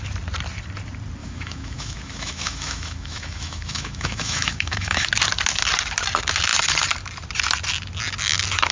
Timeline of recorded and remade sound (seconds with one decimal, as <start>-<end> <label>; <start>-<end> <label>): 0.0-1.2 recorded; 1.2-5.1 remade; 5.1-8.7 recorded